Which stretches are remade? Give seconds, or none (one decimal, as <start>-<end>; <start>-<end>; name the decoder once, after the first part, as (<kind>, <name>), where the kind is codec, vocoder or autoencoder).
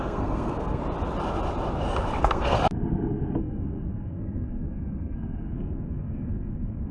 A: 0.0-0.8 (codec, SNAC); 2.2-2.6; 3.4-6.9